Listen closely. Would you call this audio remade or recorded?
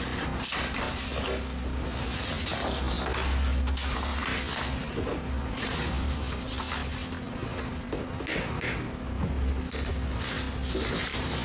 recorded